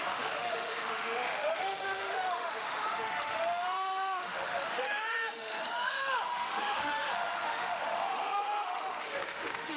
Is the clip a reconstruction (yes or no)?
yes